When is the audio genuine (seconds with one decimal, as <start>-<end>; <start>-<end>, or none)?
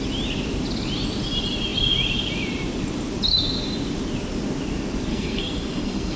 0.0-5.1